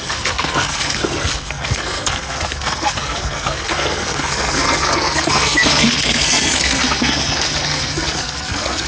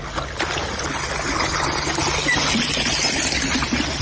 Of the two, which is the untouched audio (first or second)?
second